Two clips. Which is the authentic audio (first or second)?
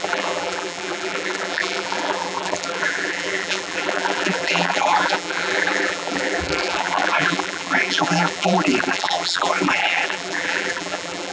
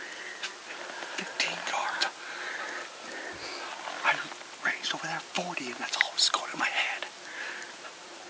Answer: second